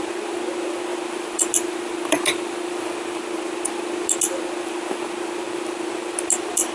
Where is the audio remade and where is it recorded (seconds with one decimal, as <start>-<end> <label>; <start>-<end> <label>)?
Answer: 0.0-6.7 recorded